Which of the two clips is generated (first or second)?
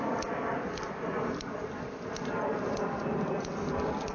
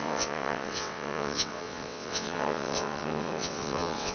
second